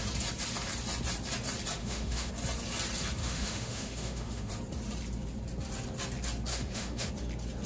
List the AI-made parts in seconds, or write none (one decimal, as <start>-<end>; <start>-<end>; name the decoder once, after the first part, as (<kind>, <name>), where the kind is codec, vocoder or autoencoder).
1.8-2.3 (autoencoder, DAC-VAE); 3.2-4.5; 6.5-7.1